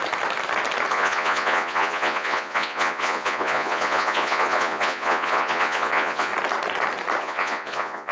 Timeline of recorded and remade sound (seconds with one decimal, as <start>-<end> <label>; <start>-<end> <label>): 0.0-0.9 recorded; 0.9-6.3 remade; 6.3-7.2 recorded; 7.2-8.1 remade